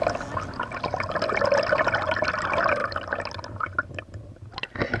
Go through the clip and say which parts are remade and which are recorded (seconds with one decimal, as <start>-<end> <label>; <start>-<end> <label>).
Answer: 0.0-5.0 recorded